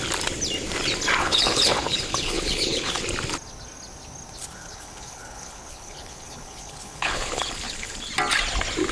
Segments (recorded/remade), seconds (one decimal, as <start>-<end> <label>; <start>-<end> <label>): 0.0-1.2 recorded; 1.2-3.0 remade; 3.0-4.4 recorded; 4.4-8.1 remade; 8.1-8.9 recorded

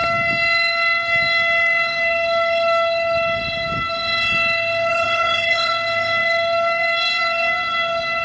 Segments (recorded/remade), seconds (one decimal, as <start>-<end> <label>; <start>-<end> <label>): 0.0-4.9 recorded; 4.9-5.7 remade; 5.7-8.2 recorded

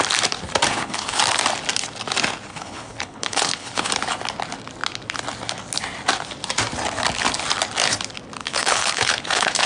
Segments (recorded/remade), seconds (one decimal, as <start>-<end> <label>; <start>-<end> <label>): 0.0-0.7 recorded; 0.7-1.2 remade; 1.2-2.5 recorded; 2.5-3.9 remade; 3.9-8.4 recorded; 8.4-9.7 remade

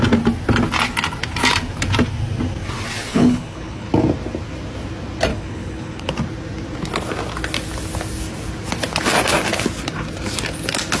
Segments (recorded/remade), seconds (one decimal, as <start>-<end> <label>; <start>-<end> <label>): 0.0-3.1 recorded; 3.1-3.9 remade; 3.9-5.3 recorded; 5.3-6.1 remade; 6.1-11.0 recorded

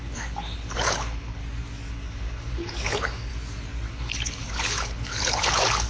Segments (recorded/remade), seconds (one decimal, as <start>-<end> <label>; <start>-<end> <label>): 0.0-1.4 remade; 1.4-1.9 recorded; 1.9-3.3 remade; 3.3-3.9 recorded; 3.9-5.9 remade